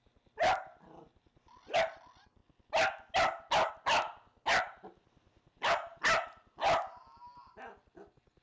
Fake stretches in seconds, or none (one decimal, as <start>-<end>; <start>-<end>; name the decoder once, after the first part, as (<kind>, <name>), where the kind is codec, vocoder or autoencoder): none